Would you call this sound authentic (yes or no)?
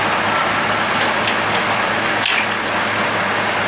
yes